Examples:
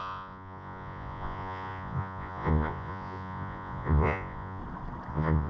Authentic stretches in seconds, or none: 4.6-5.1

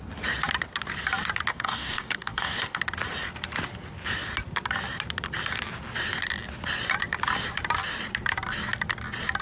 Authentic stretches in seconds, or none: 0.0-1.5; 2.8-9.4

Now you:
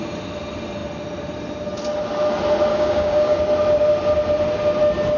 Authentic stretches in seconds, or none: 0.0-2.7; 3.4-5.2